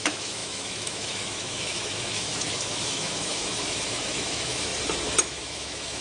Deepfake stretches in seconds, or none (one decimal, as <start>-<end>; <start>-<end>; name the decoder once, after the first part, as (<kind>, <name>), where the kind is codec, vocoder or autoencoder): 0.0-4.7 (autoencoder, DAC-VAE); 5.2-6.0